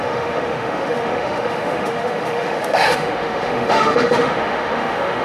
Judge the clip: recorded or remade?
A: remade